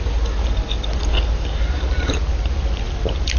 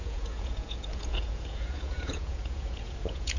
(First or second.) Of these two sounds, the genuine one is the first